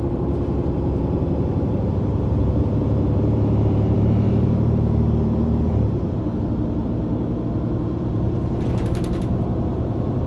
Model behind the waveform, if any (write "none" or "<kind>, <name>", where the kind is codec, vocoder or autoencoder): vocoder, BigVGAN v2